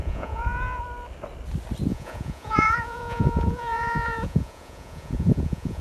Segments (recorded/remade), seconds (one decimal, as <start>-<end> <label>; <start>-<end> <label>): 0.0-0.8 remade; 0.8-1.9 recorded; 1.9-5.8 remade